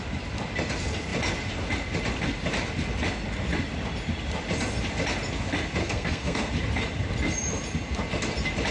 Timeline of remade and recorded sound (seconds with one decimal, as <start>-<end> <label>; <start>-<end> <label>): 0.0-5.8 recorded; 5.8-6.5 remade; 6.5-8.7 recorded